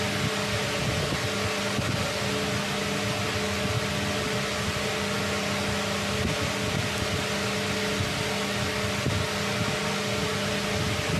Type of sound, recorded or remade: recorded